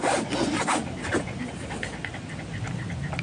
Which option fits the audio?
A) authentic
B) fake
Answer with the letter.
A